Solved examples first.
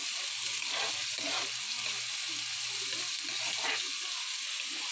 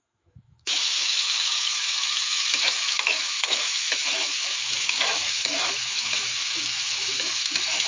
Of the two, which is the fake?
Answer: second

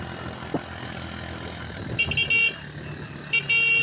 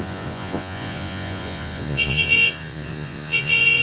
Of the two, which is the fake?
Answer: second